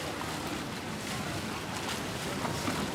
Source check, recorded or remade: recorded